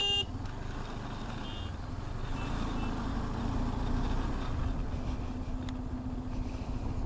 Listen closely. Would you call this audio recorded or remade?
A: recorded